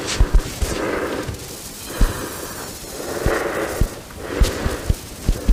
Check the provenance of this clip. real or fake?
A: real